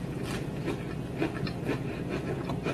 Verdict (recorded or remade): recorded